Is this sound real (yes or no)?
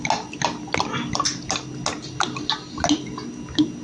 yes